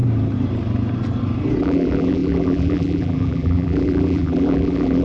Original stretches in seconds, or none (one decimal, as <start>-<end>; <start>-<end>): 0.0-1.6